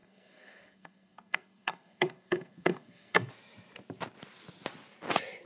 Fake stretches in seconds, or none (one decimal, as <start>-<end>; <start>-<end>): 0.0-3.3